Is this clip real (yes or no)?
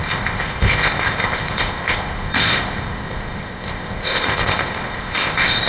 no